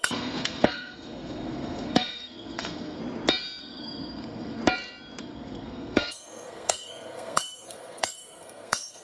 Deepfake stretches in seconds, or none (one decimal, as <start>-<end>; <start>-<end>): 0.0-3.0; 3.6-4.6; 5.2-9.0